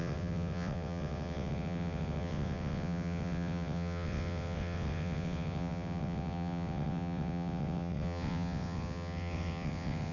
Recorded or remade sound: remade